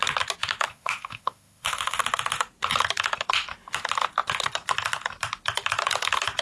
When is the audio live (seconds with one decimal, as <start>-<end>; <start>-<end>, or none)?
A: 0.0-0.7; 2.0-6.4